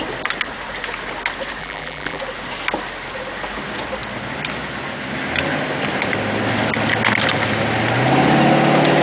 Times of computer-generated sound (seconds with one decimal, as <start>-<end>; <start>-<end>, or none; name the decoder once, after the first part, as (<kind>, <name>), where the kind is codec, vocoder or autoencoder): 1.6-2.2 (vocoder, BigVGAN v2)